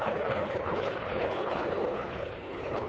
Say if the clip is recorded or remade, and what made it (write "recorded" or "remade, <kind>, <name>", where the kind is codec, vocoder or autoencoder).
remade, codec, HILCodec